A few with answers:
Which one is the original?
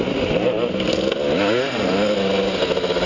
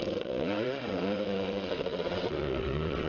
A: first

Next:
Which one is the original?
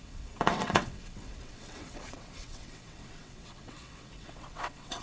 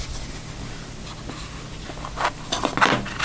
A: second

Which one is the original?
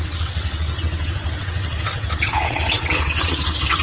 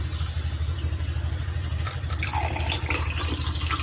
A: second